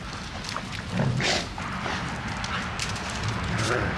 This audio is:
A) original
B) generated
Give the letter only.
A